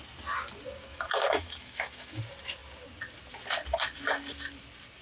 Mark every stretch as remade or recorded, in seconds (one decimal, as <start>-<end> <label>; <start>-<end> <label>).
0.0-0.9 recorded; 0.9-2.2 remade; 2.2-5.0 recorded